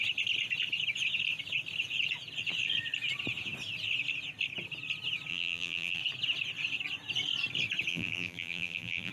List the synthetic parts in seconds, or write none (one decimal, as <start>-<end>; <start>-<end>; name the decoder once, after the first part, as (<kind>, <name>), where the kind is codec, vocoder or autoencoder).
5.3-6.0 (vocoder, BigVGAN v2); 7.9-9.1